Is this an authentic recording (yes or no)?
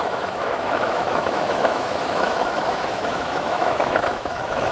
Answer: no